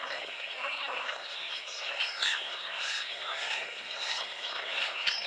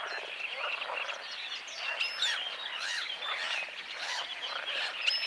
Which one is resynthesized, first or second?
first